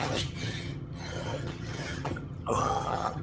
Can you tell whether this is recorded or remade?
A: remade